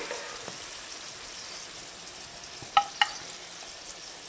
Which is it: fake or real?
real